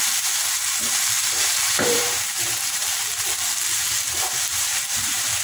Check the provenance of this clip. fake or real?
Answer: fake